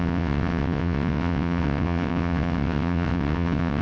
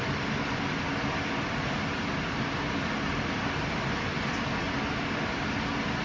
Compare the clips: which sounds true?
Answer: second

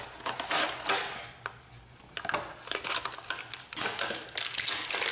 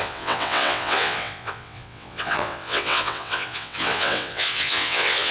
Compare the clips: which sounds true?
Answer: first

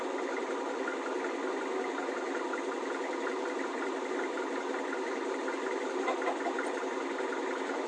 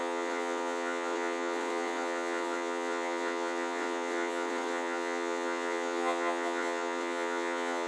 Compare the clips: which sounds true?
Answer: first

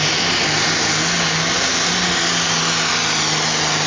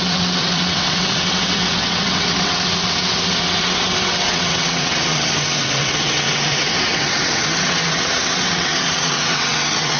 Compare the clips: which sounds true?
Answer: first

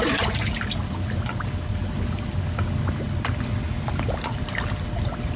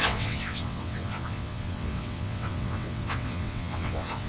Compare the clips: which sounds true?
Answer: first